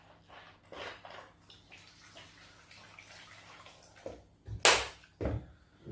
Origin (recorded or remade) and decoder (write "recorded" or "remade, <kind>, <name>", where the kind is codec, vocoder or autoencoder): recorded